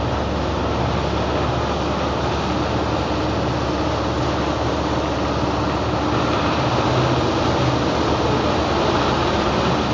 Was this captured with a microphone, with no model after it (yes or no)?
yes